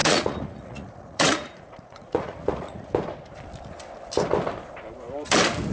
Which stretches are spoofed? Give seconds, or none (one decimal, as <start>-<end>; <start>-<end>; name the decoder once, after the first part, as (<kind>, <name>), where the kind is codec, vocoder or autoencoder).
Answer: 0.0-2.9 (vocoder, Vocos)